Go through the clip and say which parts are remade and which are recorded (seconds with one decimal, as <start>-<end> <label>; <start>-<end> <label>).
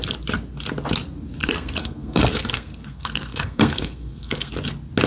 0.0-1.4 recorded; 1.4-4.5 remade; 4.5-5.1 recorded